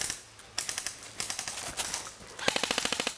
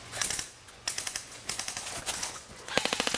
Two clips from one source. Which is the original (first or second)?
first